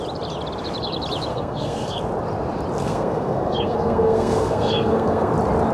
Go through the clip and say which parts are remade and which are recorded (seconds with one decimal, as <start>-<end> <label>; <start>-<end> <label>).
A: 0.0-1.3 recorded; 1.3-2.0 remade; 2.0-2.8 recorded; 2.8-5.3 remade; 5.3-5.7 recorded